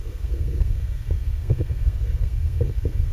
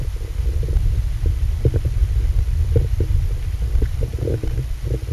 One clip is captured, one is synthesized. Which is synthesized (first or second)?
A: first